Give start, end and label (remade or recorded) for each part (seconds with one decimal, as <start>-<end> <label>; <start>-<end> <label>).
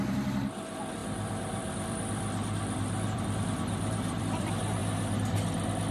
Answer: 0.0-4.8 remade; 4.8-5.9 recorded